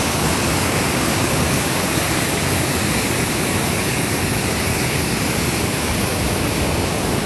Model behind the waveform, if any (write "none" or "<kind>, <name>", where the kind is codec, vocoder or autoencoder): codec, DAC